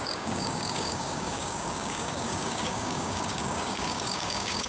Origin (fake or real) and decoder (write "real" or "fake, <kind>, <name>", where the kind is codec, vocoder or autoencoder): fake, codec, DAC